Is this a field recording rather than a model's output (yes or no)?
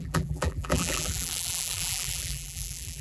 no